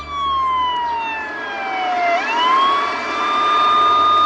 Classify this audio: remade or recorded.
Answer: recorded